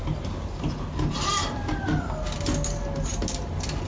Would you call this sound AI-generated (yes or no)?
no